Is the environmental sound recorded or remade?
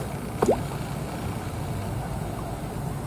recorded